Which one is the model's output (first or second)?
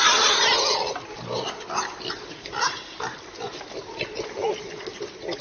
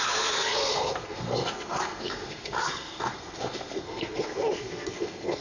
second